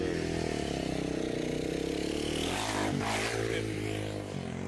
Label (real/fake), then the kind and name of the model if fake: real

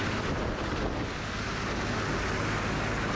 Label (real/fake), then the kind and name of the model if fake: real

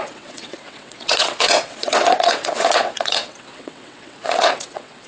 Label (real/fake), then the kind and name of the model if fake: fake, vocoder, WaveNeXt